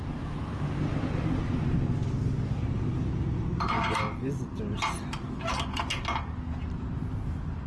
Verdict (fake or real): real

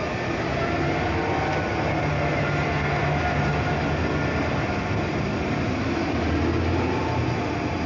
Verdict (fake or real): real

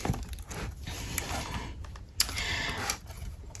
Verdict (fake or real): real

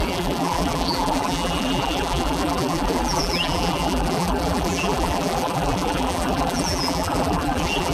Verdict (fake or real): fake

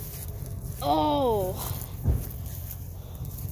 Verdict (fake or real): real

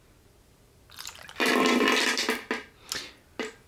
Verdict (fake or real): real